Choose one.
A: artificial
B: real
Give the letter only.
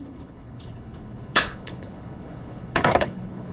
A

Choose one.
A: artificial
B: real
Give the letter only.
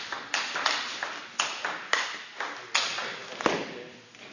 B